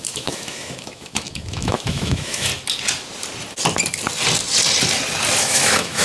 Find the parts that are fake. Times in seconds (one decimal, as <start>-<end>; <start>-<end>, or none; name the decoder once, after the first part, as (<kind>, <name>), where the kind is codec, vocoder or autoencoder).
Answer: 0.0-2.5 (autoencoder, DAC-VAE); 5.4-6.0